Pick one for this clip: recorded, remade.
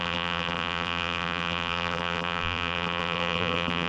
remade